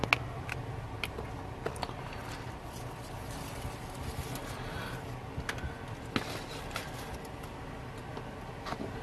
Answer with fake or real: real